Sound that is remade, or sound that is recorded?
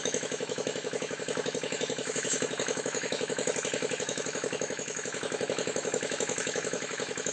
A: remade